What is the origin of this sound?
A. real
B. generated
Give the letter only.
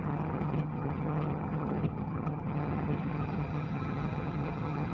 B